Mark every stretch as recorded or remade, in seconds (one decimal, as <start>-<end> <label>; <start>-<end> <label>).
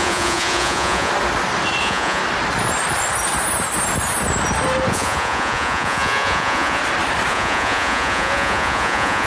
0.0-1.1 remade; 1.1-1.8 recorded; 1.8-2.2 remade; 2.2-4.9 recorded; 4.9-6.8 remade; 6.8-7.3 recorded; 7.3-9.3 remade